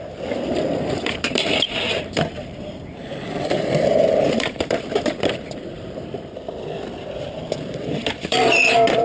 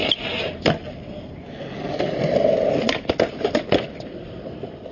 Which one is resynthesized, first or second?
first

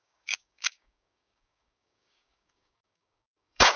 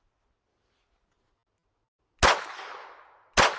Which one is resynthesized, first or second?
first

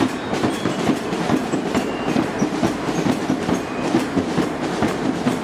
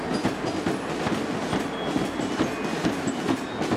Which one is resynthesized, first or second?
first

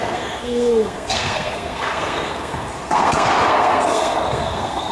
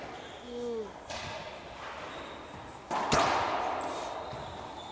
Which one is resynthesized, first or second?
first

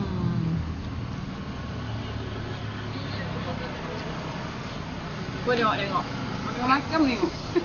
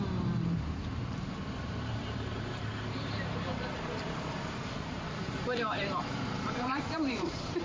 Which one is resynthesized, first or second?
second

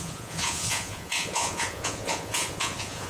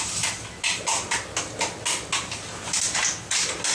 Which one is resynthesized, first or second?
first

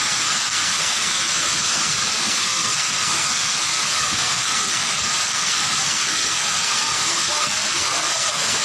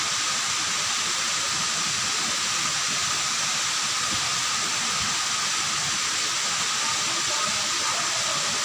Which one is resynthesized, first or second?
first